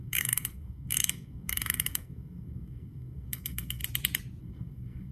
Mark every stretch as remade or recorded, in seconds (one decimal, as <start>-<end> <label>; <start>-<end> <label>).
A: 0.0-3.8 remade; 3.8-4.4 recorded; 4.4-5.1 remade